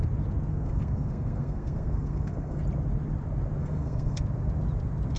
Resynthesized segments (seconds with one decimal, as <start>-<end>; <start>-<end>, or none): 0.5-2.6; 3.6-4.2